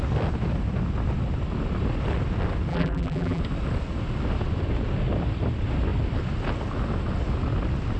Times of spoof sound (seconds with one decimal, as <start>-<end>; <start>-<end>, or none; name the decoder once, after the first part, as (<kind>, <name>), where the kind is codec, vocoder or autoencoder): 2.7-3.4 (vocoder, BigVGAN v2)